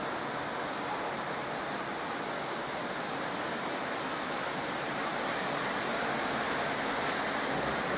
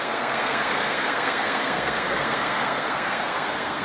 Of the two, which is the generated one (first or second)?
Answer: second